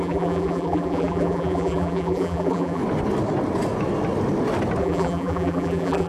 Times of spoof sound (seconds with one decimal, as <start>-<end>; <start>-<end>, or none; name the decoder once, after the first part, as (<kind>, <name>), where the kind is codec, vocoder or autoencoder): 0.0-2.8 (vocoder, BigVGAN v2); 4.8-6.1